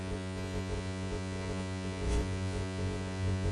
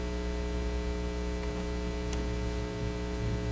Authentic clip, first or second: second